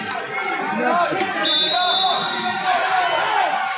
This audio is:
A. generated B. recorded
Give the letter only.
B